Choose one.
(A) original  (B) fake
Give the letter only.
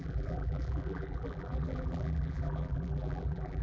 B